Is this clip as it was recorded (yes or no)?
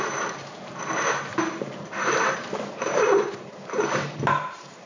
no